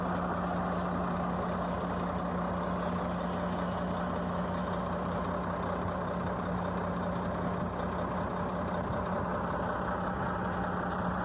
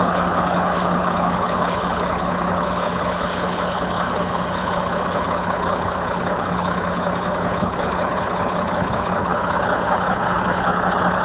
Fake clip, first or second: second